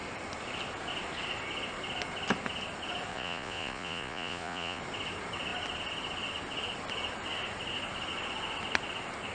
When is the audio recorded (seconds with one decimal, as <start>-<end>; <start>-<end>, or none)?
0.0-3.1; 4.8-9.3